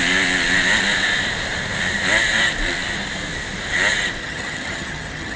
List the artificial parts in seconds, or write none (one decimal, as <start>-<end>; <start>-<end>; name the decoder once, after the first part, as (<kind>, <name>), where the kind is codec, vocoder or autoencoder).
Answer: 4.2-5.4 (vocoder, HiFi-GAN)